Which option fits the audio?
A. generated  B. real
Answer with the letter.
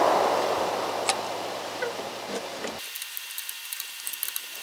B